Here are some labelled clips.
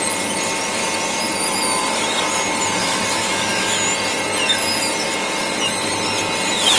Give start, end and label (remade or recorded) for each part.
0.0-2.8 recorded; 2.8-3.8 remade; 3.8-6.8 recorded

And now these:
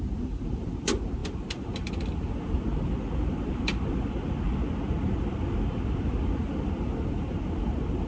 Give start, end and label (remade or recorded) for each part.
0.0-8.1 recorded

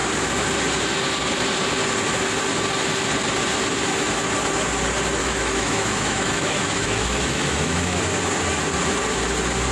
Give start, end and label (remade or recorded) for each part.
0.0-5.2 recorded; 5.2-8.0 remade; 8.0-9.7 recorded

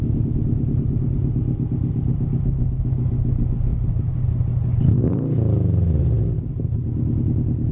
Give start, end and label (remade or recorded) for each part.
0.0-7.7 recorded